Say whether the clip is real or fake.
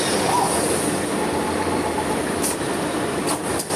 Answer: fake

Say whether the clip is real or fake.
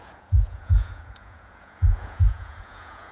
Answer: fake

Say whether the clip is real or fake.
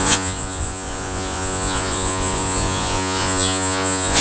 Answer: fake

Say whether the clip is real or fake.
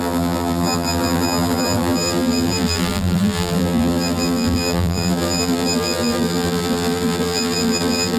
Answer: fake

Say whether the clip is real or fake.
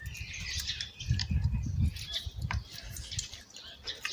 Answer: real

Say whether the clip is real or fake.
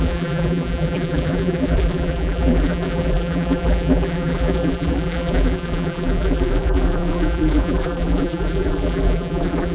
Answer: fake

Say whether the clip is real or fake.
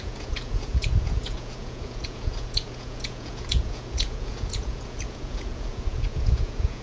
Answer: fake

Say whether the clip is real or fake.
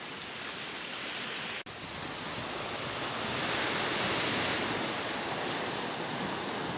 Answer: real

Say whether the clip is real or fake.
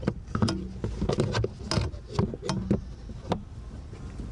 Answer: real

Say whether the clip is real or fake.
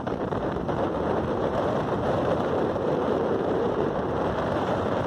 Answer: fake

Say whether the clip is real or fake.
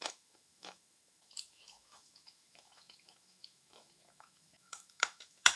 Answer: fake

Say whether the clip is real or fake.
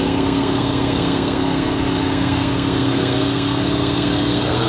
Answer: fake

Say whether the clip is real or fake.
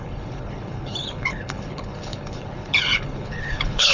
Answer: fake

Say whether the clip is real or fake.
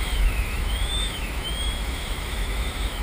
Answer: fake